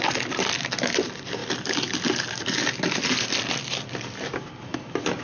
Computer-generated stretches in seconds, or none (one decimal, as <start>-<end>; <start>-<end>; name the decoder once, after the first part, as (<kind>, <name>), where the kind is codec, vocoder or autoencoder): none